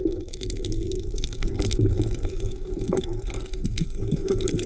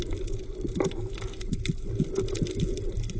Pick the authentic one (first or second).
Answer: second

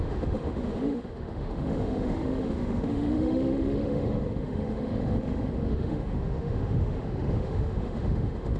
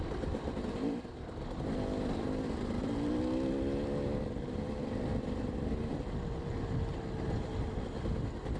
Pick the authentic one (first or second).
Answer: second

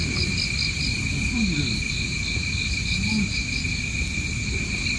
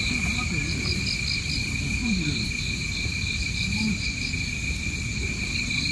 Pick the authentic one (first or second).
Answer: first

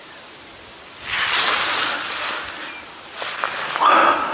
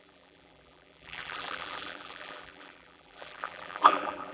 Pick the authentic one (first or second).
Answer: first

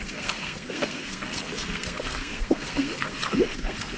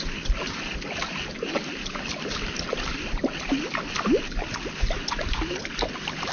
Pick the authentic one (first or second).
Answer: second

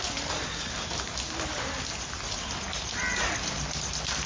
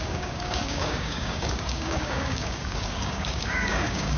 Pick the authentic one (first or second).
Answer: first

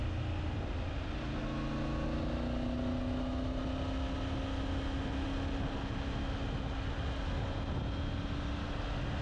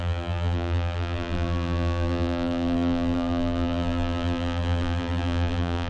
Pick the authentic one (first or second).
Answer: first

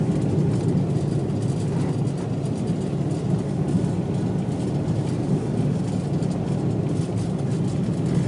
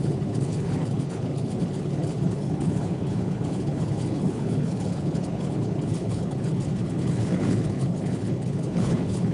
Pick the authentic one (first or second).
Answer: first